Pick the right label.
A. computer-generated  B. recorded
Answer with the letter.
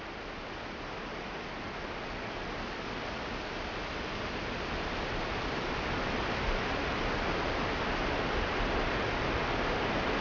B